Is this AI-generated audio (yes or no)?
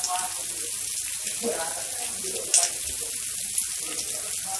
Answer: no